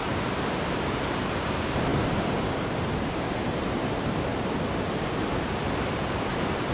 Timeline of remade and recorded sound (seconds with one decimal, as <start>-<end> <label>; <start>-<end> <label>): 0.0-4.3 remade; 4.3-6.7 recorded